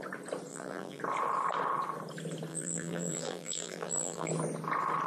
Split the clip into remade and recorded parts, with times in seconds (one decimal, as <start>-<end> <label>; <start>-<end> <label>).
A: 0.0-0.5 recorded; 0.5-1.0 remade; 1.0-2.5 recorded; 2.5-4.3 remade; 4.3-5.1 recorded